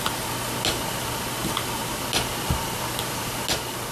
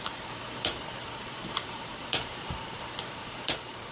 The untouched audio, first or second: first